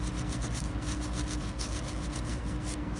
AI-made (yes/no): yes